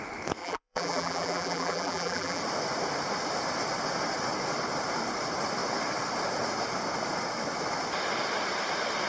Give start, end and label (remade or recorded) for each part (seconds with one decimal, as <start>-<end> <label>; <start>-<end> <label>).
0.0-0.4 recorded; 0.4-2.4 remade; 2.4-9.1 recorded